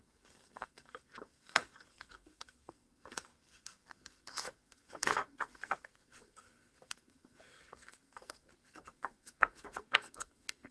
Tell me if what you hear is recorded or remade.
remade